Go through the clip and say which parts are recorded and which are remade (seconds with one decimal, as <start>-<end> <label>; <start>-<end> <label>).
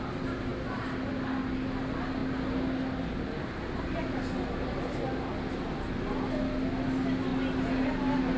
0.0-8.4 recorded